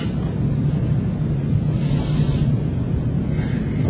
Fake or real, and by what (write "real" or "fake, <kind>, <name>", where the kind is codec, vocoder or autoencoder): real